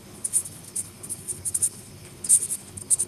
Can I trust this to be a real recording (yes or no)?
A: no